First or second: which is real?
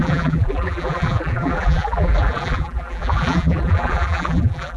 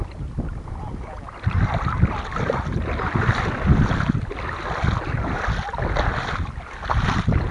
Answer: second